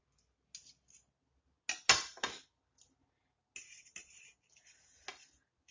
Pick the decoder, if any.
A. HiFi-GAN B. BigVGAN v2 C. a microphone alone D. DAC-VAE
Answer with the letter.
C